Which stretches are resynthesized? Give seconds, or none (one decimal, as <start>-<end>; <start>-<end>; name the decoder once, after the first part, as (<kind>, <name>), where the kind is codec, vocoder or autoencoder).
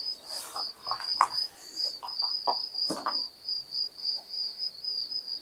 4.0-4.7 (autoencoder, DAC-VAE)